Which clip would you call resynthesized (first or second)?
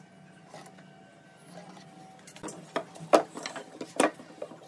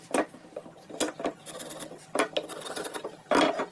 second